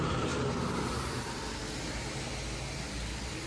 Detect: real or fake real